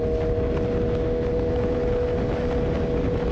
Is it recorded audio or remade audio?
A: recorded